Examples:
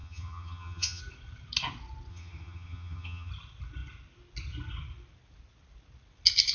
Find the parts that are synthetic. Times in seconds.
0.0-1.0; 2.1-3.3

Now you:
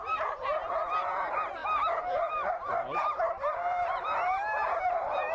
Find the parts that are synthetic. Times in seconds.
0.0-5.3